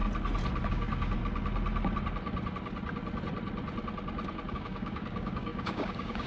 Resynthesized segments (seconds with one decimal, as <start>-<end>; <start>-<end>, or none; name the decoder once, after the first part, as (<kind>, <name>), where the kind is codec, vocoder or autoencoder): 0.7-1.2 (codec, DAC); 4.5-6.3